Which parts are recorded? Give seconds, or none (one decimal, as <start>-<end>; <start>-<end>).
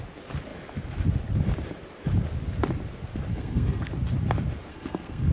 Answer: 0.0-3.3; 3.9-4.7